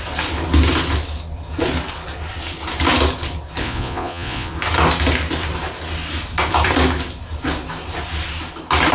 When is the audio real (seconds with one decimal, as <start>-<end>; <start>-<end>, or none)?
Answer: 0.0-3.6; 4.5-8.9